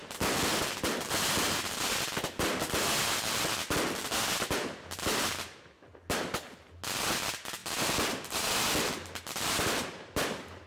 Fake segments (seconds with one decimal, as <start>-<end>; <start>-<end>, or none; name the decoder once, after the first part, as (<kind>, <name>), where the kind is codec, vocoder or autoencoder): none